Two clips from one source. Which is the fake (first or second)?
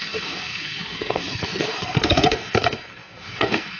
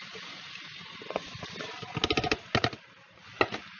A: first